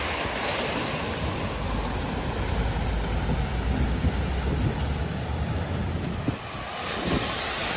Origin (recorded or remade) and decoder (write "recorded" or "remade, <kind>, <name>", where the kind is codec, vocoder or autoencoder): recorded